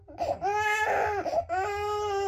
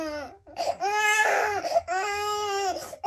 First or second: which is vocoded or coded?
second